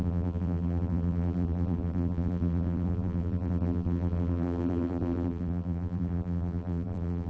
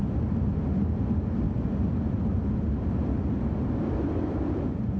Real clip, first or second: second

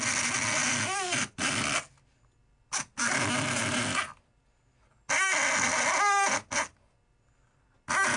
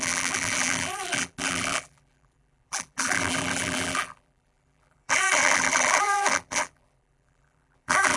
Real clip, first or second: first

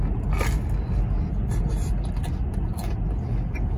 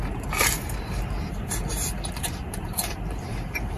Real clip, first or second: first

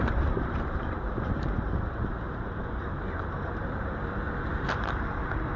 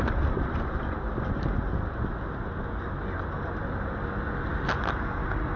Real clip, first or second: second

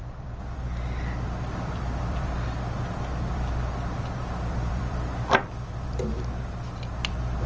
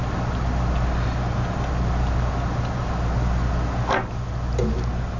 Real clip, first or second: second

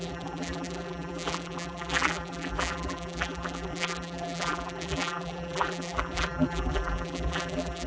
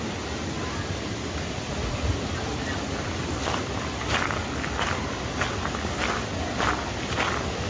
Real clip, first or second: second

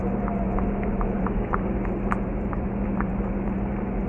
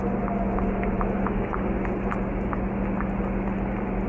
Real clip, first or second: second